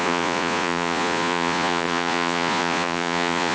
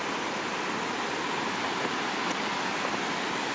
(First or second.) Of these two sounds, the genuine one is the second